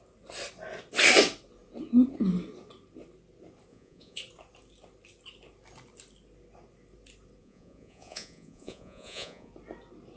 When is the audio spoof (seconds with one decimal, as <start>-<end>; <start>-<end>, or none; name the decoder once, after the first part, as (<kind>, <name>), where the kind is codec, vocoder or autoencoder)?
3.7-4.2 (vocoder, Vocos); 7.4-9.5